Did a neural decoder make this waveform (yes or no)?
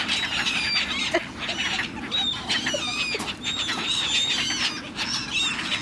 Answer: no